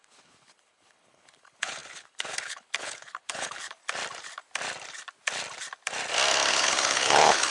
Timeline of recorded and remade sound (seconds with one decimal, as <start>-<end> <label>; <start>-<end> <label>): 0.0-3.8 remade; 3.8-6.5 recorded; 6.5-7.5 remade